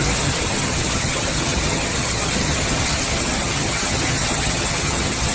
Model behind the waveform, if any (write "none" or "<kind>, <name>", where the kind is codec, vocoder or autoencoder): vocoder, HiFi-GAN